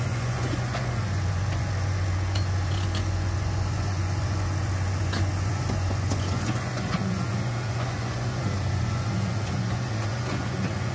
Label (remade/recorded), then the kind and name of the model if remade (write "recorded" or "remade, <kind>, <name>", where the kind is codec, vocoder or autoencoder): remade, vocoder, Vocos